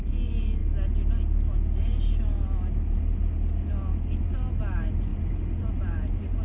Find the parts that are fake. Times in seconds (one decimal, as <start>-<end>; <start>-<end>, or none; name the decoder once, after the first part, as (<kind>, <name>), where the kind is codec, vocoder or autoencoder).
none

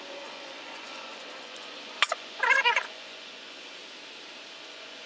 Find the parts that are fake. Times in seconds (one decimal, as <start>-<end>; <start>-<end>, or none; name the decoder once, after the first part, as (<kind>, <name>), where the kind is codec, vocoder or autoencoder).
0.0-3.8 (vocoder, Vocos); 4.5-5.1

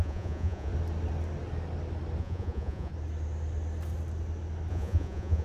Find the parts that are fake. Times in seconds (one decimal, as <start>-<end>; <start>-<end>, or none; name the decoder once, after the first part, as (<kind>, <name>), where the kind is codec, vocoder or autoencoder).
0.0-0.7 (vocoder, Vocos); 2.2-2.9; 4.7-5.4

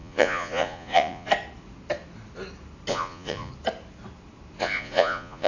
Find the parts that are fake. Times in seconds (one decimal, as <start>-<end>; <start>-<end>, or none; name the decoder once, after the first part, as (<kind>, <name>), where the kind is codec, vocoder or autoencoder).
0.0-1.3 (vocoder, Vocos); 2.9-3.5; 4.6-5.5

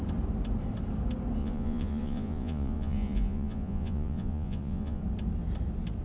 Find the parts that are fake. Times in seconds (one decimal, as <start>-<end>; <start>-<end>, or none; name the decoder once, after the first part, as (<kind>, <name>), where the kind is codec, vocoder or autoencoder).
1.4-5.0 (vocoder, Vocos)

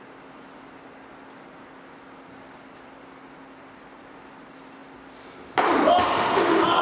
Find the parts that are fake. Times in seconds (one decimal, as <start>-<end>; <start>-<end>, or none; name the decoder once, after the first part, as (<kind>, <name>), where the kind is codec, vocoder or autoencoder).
none

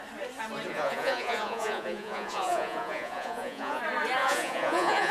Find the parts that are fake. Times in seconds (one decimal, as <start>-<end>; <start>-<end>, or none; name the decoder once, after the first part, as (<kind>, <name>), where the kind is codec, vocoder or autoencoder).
0.7-3.8 (vocoder, Vocos); 4.2-5.1

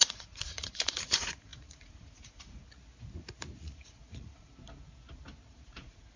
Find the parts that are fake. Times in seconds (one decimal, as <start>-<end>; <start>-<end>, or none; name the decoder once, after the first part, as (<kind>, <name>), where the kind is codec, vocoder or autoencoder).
0.0-2.6 (vocoder, Vocos); 3.6-4.5; 5.5-6.2